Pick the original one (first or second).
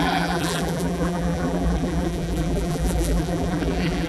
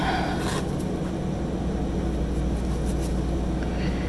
second